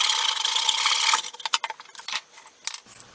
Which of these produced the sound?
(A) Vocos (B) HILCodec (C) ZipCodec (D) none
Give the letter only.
D